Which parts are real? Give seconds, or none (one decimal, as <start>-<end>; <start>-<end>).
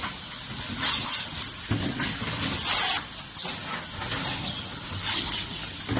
0.0-6.0